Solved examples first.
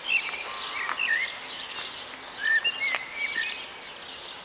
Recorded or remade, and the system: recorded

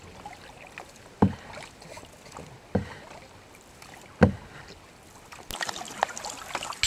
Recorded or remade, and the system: recorded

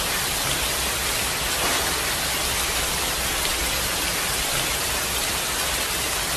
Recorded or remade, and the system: recorded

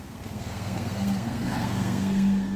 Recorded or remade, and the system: remade, codec, SNAC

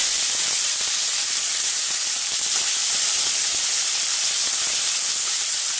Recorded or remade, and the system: recorded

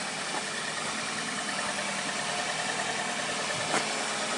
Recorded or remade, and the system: recorded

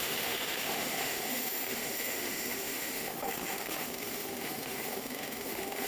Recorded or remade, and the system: remade, autoencoder, DAC-VAE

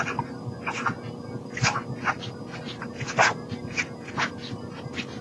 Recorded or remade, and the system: recorded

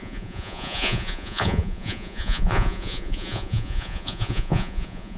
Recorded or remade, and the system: remade, vocoder, Vocos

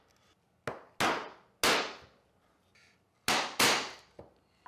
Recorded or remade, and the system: recorded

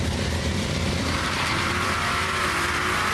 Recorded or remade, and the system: remade, vocoder, BigVGAN v2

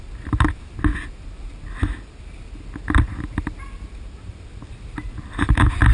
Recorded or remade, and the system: recorded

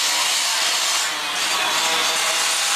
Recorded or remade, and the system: recorded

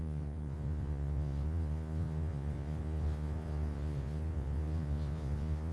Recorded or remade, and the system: remade, vocoder, Vocos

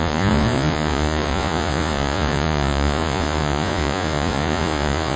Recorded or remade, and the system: remade, vocoder, Vocos